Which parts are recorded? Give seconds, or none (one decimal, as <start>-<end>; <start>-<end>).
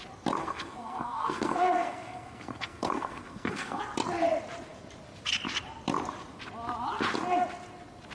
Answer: 0.0-0.4; 3.8-8.1